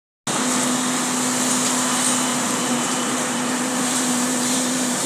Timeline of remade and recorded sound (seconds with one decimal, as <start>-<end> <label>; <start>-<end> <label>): 0.0-2.3 recorded; 2.3-5.1 remade